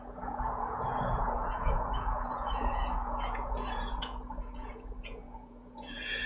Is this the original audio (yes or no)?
no